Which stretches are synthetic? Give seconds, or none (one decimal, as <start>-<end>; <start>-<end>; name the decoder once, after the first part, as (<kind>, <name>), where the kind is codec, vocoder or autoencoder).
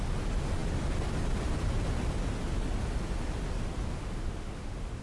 4.0-5.0 (autoencoder, DAC-VAE)